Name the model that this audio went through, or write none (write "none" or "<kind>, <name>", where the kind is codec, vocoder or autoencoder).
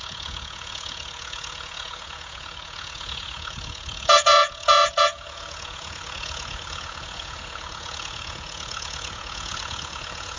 vocoder, Vocos